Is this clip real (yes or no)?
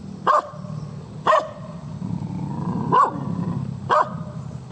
yes